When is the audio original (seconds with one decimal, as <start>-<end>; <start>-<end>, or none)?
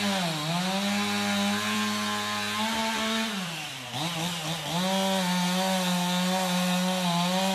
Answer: 0.0-2.8; 3.7-7.5